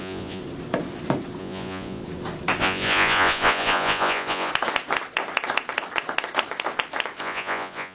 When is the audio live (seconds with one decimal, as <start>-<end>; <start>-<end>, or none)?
0.4-1.4; 2.0-2.6; 4.5-7.2